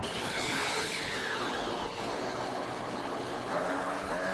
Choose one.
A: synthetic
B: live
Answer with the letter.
A